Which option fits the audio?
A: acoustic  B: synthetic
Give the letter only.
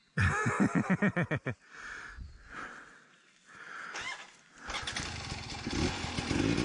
A